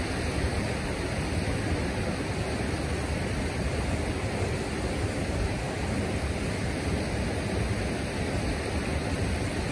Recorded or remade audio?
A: recorded